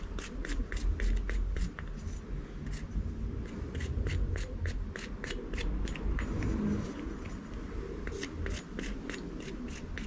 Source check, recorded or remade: recorded